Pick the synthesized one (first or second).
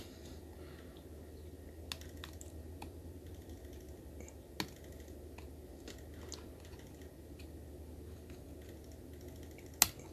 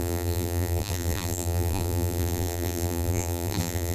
second